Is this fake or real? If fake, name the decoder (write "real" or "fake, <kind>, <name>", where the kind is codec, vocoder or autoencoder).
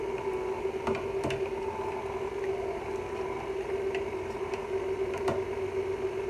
real